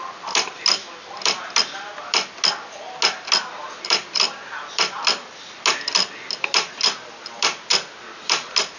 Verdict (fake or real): real